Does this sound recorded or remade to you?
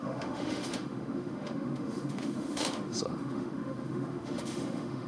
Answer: remade